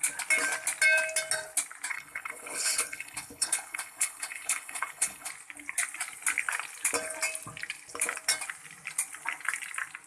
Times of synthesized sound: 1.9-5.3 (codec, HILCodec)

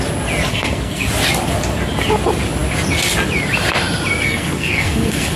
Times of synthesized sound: 0.5-1.1 (codec, SNAC); 4.2-5.4

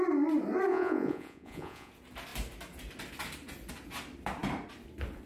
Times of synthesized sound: 0.7-1.9 (vocoder, Vocos)

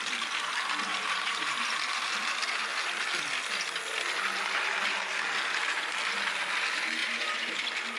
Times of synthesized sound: 0.9-1.6 (vocoder, BigVGAN v2); 7.0-7.6